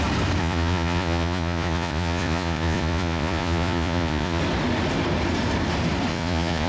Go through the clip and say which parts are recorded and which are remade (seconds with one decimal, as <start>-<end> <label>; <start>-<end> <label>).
0.0-0.4 recorded; 0.4-4.4 remade; 4.4-6.1 recorded; 6.1-6.7 remade